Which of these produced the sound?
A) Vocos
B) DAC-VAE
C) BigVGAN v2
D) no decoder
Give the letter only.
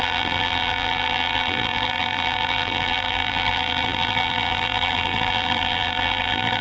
C